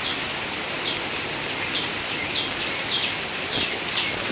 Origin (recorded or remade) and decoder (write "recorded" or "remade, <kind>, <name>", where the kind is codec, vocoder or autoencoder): recorded